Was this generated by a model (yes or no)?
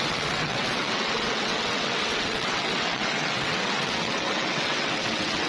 yes